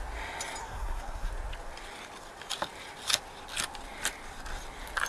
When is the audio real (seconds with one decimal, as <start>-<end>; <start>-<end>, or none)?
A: 0.0-0.6; 1.3-5.1